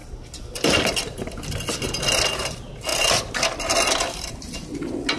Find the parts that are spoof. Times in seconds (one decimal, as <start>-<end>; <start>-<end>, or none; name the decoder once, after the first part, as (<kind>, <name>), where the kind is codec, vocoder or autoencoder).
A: none